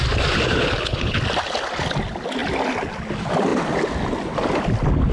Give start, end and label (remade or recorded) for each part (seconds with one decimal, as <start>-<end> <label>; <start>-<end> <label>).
0.0-0.5 recorded; 0.5-1.2 remade; 1.2-5.1 recorded